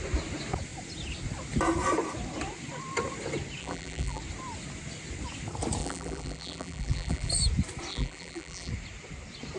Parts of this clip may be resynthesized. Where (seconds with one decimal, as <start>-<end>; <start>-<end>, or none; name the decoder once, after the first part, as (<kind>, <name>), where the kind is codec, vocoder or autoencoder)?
3.6-4.2 (vocoder, BigVGAN v2); 5.8-7.3; 7.9-8.7